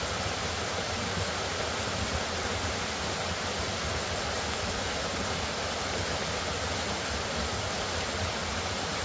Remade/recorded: recorded